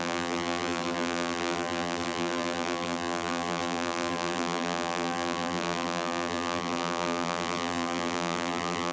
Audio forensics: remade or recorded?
remade